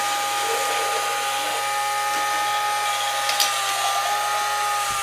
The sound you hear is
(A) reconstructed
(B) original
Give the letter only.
B